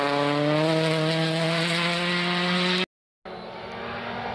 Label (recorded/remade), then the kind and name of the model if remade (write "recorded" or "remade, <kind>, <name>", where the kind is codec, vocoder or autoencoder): recorded